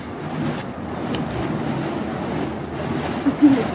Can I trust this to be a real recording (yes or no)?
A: yes